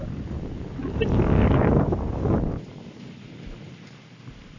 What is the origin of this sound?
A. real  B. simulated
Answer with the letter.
A